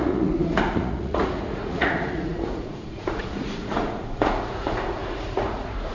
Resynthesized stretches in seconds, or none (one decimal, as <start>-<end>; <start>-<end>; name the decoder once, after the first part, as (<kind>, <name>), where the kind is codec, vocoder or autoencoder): 0.0-5.9 (vocoder, Vocos)

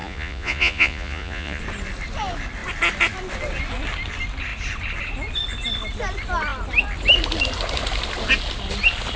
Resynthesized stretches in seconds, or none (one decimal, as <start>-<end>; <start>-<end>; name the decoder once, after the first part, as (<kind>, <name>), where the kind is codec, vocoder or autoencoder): 0.0-1.6 (vocoder, Vocos)

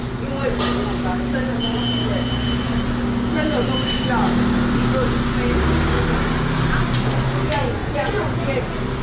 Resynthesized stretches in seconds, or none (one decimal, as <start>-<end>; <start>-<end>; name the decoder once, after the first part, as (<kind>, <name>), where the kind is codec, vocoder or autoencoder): 7.8-8.6 (vocoder, Vocos)

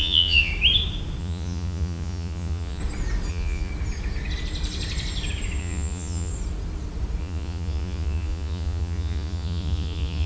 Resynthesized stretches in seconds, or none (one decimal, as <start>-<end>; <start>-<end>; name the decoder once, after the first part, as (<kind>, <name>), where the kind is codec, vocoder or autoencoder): 0.0-0.5 (vocoder, Vocos); 1.2-2.8; 3.3-3.7; 5.6-6.3; 7.2-10.3

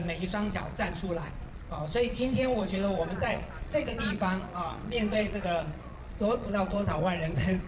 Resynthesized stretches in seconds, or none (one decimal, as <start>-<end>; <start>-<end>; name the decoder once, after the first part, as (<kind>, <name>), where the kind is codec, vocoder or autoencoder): 0.0-7.7 (vocoder, Vocos)

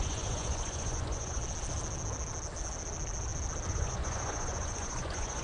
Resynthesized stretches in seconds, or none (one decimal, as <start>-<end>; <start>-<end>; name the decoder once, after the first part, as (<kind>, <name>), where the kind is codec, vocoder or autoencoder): 0.0-1.4 (vocoder, Vocos); 3.7-5.4

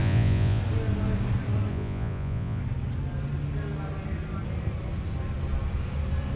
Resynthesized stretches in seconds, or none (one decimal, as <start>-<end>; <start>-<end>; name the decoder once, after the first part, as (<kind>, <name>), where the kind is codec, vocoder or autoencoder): 0.0-0.6 (vocoder, Vocos); 1.7-2.6

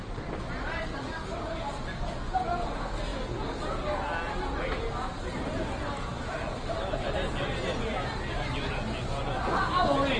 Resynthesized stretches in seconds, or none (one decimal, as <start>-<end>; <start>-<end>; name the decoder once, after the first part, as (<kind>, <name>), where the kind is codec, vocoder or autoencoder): none